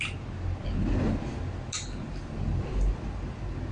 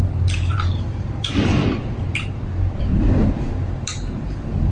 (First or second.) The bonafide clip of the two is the first